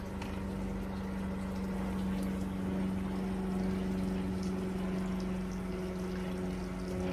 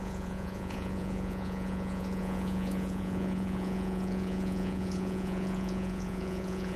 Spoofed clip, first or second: second